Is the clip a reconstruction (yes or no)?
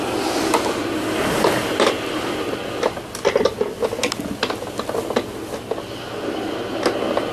no